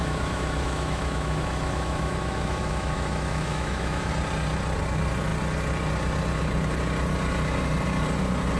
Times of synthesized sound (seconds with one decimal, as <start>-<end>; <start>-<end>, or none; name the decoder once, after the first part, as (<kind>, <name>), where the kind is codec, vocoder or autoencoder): 0.0-4.1 (autoencoder, DAC-VAE)